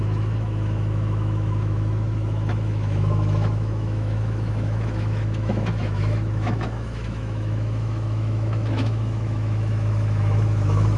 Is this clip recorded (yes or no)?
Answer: no